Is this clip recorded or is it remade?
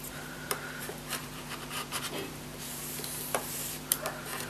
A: remade